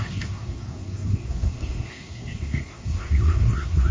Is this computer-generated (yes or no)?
yes